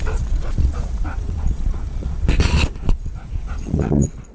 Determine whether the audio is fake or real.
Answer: fake